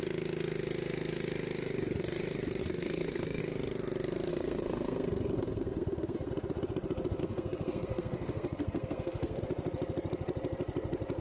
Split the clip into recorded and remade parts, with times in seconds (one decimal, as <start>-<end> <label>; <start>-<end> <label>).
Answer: 0.0-2.6 recorded; 2.6-3.4 remade; 3.4-4.3 recorded; 4.3-6.3 remade; 6.3-7.2 recorded; 7.2-9.4 remade; 9.4-11.2 recorded